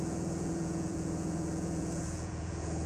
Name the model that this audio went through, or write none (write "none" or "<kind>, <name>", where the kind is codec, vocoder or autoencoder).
vocoder, Vocos